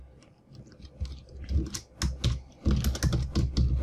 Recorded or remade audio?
recorded